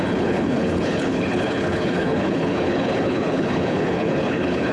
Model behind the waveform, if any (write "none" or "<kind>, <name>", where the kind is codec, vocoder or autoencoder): codec, HILCodec